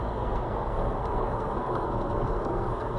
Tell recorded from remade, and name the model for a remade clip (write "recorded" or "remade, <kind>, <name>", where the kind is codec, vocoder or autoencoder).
remade, codec, SNAC